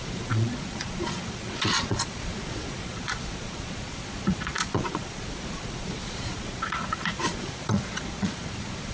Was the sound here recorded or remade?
remade